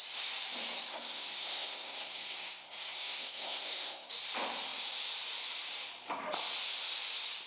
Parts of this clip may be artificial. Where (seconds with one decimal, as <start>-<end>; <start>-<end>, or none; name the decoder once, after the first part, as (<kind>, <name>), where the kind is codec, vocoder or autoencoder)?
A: 0.9-4.1 (codec, SNAC)